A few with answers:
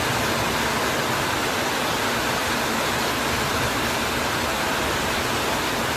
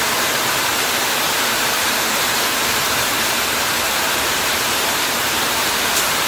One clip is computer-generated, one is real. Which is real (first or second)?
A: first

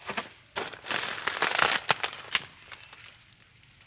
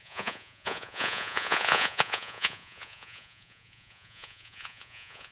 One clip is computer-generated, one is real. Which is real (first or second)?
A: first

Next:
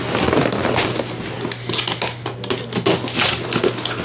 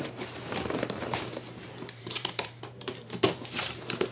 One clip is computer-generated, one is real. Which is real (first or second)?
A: first